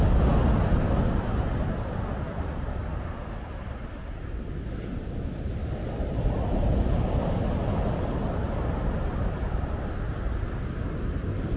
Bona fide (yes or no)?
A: yes